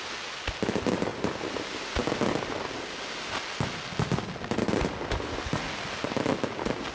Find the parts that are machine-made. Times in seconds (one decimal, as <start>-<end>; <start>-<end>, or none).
none